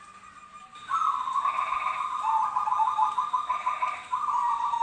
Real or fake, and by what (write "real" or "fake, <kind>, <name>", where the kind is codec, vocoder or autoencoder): real